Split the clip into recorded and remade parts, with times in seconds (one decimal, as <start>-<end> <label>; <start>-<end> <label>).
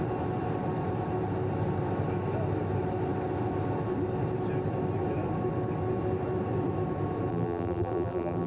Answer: 0.0-7.3 recorded; 7.3-8.5 remade